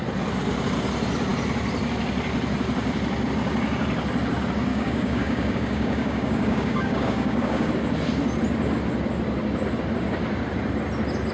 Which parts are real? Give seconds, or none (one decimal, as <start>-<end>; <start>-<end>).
0.0-4.7; 7.7-11.3